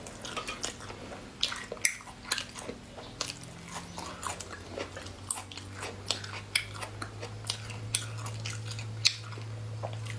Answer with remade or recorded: recorded